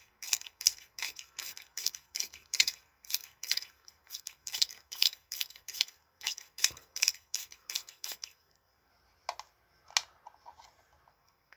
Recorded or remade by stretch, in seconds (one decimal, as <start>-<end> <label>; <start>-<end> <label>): 0.0-8.9 remade; 8.9-11.1 recorded; 11.1-11.6 remade